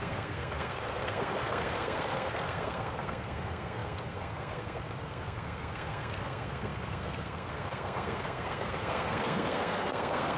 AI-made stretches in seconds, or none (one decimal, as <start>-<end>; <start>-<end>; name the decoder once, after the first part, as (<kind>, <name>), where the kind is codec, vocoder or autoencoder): 0.0-10.4 (codec, SNAC)